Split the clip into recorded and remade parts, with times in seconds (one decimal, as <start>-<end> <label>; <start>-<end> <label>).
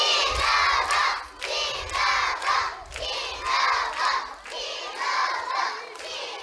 0.0-5.2 recorded; 5.2-6.0 remade; 6.0-6.4 recorded